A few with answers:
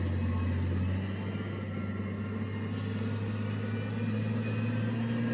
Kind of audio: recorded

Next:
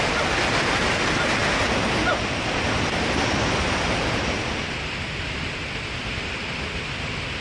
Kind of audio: recorded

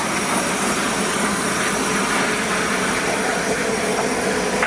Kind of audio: recorded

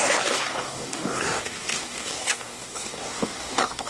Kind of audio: remade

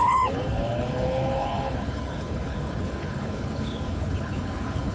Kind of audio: remade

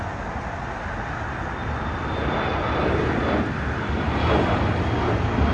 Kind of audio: recorded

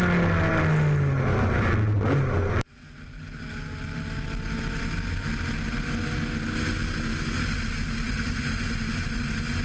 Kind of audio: recorded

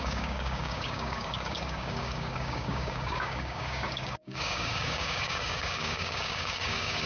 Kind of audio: remade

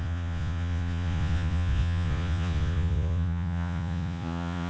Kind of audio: remade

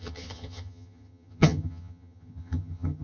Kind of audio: remade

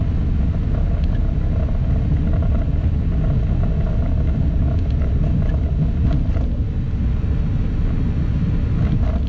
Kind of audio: recorded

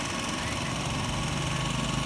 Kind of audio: recorded